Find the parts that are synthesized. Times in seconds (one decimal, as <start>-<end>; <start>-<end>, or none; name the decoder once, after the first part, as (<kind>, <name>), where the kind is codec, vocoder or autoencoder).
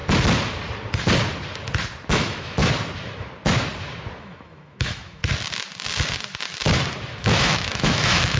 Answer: 2.1-2.6 (autoencoder, DAC-VAE); 4.2-5.2; 7.2-8.4